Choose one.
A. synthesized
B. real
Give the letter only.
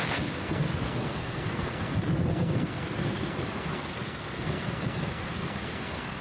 A